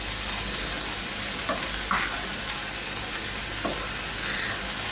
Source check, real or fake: real